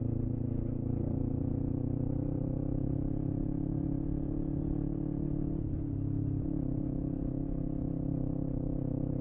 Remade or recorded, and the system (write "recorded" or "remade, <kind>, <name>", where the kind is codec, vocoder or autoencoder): recorded